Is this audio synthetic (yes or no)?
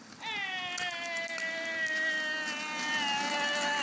no